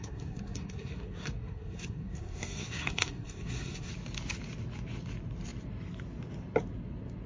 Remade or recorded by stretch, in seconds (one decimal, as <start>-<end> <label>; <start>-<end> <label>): 0.0-3.9 remade; 3.9-7.3 recorded